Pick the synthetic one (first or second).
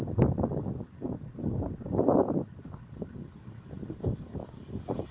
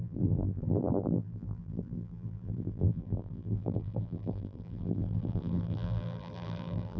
second